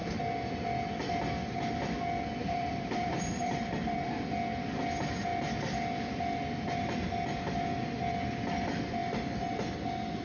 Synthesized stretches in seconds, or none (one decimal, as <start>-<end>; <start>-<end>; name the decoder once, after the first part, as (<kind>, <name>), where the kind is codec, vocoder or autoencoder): 2.4-4.1 (vocoder, BigVGAN v2)